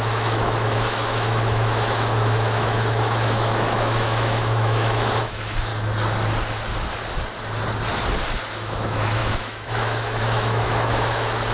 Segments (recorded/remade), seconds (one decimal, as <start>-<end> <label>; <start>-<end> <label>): 0.0-5.7 remade; 5.7-8.5 recorded; 8.5-11.5 remade